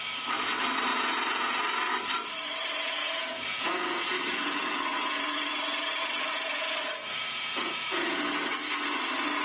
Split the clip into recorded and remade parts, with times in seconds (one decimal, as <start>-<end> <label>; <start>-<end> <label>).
0.0-0.9 recorded; 0.9-1.6 remade; 1.6-3.0 recorded; 3.0-8.2 remade; 8.2-9.4 recorded